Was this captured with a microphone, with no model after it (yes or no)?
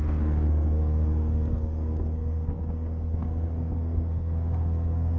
no